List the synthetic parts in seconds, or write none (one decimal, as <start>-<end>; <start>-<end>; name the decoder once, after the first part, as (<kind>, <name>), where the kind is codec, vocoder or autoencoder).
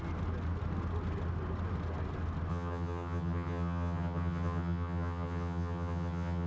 2.5-6.5 (vocoder, HiFi-GAN)